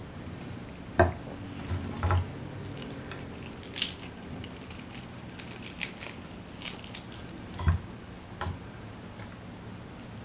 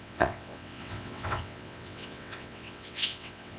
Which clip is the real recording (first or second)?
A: first